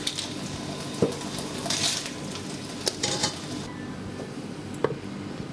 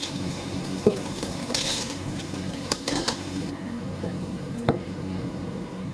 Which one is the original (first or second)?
first